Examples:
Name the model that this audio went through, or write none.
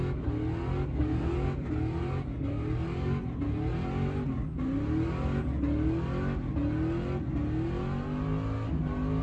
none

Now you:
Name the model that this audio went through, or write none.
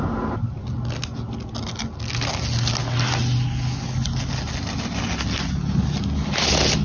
none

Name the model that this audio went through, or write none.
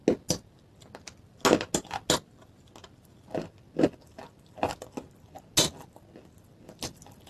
none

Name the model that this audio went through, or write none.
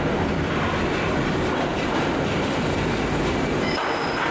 none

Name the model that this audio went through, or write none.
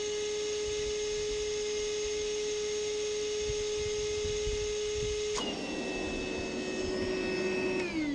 none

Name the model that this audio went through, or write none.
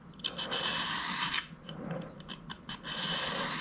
none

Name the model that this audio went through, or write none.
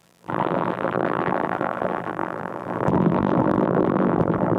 vocoder, BigVGAN v2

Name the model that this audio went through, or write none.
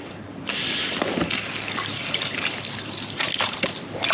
vocoder, BigVGAN v2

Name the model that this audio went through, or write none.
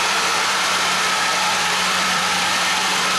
vocoder, BigVGAN v2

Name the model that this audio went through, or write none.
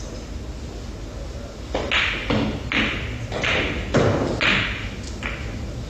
none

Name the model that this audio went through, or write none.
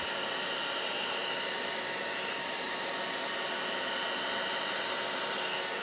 none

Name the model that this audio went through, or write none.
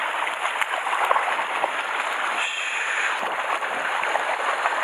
none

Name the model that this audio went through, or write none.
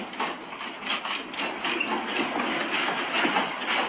none